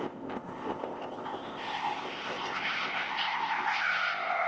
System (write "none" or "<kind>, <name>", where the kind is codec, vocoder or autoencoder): codec, ZipCodec